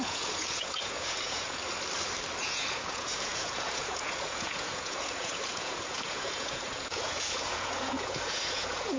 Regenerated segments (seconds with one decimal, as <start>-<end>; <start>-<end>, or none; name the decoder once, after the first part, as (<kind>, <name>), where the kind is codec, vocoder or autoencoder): 0.0-1.6 (vocoder, Vocos); 2.4-9.0